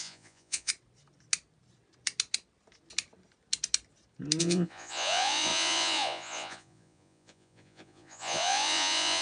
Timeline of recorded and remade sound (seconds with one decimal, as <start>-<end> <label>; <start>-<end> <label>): 0.0-0.7 remade; 0.7-4.4 recorded; 4.4-9.2 remade